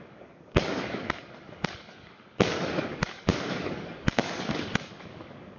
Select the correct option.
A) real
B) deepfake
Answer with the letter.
B